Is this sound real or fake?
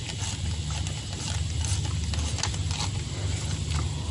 real